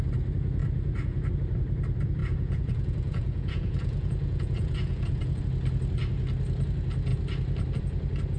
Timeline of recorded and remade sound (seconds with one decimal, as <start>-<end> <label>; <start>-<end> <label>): 0.0-2.2 recorded; 2.2-5.4 remade; 5.4-8.4 recorded